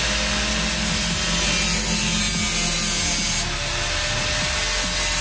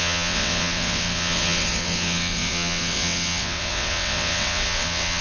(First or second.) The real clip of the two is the first